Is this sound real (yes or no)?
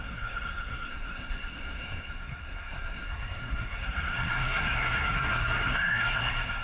no